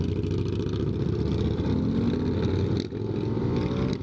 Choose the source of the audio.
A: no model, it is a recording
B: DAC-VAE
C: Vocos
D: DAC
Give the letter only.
A